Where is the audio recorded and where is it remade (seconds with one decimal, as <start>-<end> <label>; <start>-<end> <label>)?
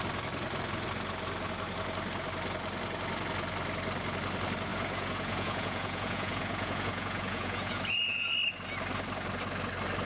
0.0-4.7 recorded; 4.7-8.3 remade; 8.3-10.0 recorded